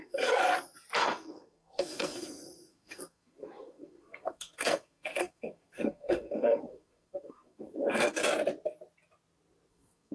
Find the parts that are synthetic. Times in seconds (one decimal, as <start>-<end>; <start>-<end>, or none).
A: 0.0-0.4; 1.0-8.2; 9.7-10.1